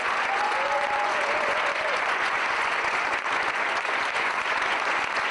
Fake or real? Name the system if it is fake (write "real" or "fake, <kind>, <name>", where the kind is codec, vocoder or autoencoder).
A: fake, vocoder, Vocos